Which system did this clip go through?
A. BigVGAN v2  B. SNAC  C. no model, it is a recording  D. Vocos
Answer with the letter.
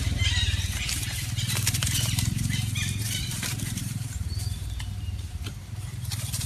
A